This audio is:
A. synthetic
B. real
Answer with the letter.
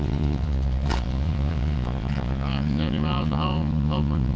A